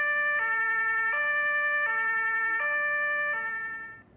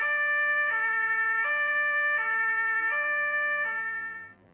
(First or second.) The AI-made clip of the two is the second